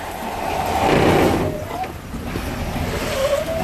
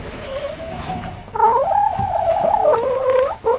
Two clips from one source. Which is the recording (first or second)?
first